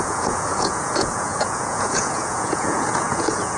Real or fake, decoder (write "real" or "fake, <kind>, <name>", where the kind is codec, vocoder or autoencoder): fake, vocoder, Vocos